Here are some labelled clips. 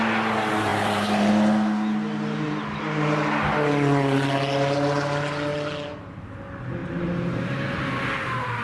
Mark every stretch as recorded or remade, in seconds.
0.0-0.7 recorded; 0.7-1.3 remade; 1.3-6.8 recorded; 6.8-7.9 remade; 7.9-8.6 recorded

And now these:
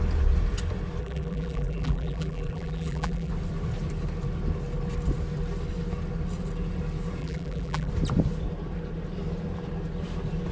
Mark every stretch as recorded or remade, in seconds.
0.0-1.0 recorded; 1.0-3.3 remade; 3.3-7.2 recorded; 7.2-7.9 remade; 7.9-10.5 recorded

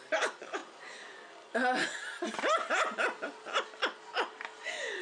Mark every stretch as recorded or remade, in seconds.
0.0-0.6 remade; 0.6-3.6 recorded; 3.6-5.0 remade

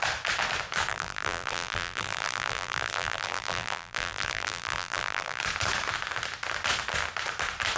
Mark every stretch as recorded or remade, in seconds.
0.0-0.9 recorded; 0.9-5.4 remade; 5.4-7.8 recorded